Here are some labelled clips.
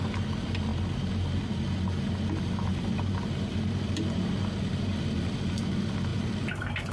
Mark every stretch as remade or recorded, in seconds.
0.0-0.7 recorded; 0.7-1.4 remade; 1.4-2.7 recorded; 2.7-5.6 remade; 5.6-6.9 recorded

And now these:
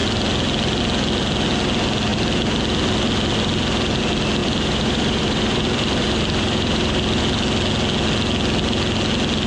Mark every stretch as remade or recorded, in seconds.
0.0-4.4 recorded; 4.4-7.2 remade; 7.2-9.5 recorded

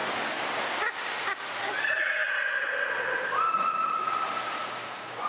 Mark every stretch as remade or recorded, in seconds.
0.0-0.8 remade; 0.8-2.2 recorded; 2.2-4.6 remade; 4.6-5.3 recorded

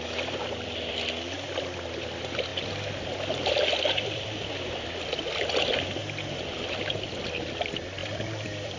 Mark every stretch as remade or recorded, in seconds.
0.0-2.5 remade; 2.5-3.7 recorded; 3.7-6.0 remade; 6.0-6.9 recorded; 6.9-8.8 remade